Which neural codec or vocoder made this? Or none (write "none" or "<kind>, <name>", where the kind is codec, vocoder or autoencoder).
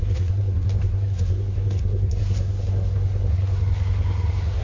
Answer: codec, SNAC